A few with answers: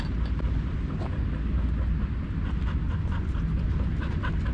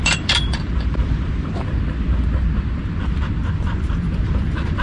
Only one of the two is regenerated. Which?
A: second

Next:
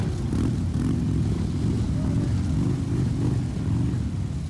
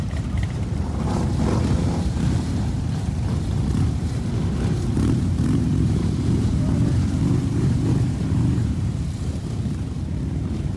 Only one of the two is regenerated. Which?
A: second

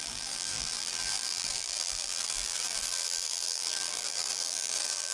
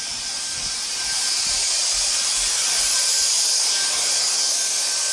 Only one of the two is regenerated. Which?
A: first